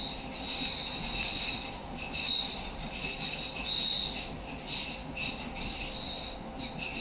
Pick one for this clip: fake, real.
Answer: real